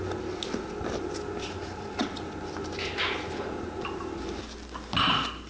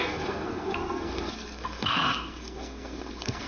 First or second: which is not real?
second